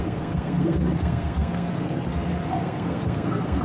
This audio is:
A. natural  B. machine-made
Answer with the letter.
B